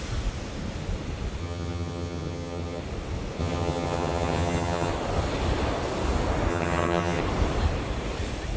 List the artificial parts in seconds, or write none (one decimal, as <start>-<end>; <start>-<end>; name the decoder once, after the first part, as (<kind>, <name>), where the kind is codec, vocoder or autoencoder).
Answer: 1.4-2.8 (vocoder, HiFi-GAN); 3.4-4.9; 6.5-7.2